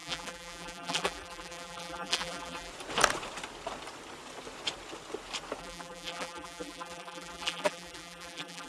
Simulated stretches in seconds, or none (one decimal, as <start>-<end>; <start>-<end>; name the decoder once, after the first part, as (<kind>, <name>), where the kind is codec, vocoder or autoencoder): 0.0-2.7 (vocoder, BigVGAN v2); 5.6-8.7